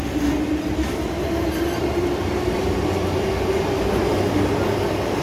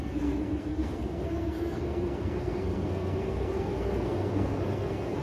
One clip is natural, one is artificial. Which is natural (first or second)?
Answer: first